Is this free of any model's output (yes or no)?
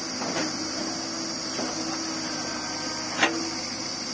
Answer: yes